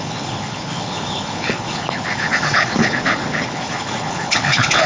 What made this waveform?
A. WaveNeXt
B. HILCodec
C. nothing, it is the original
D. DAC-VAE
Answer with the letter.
B